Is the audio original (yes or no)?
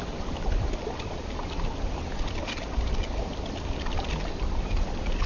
yes